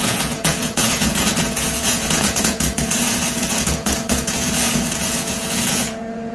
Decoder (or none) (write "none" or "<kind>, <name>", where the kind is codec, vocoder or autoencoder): vocoder, Vocos